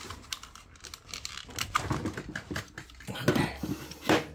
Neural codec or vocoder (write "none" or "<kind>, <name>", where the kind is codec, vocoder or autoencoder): none